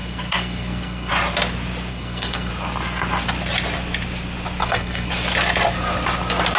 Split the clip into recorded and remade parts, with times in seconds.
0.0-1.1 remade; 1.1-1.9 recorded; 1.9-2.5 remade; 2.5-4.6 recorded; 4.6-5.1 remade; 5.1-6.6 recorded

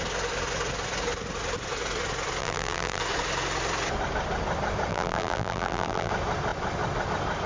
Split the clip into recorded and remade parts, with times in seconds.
0.0-2.4 recorded; 2.4-3.0 remade; 3.0-4.9 recorded; 4.9-6.1 remade; 6.1-7.5 recorded

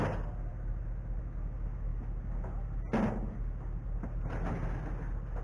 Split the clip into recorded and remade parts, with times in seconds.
0.0-5.4 recorded

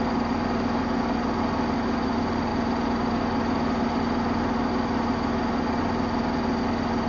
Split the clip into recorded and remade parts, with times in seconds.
0.0-7.1 recorded